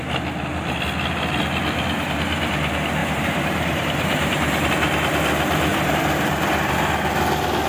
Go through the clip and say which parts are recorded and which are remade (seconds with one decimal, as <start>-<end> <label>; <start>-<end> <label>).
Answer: 0.0-3.0 recorded; 3.0-4.7 remade; 4.7-5.7 recorded; 5.7-6.7 remade; 6.7-7.7 recorded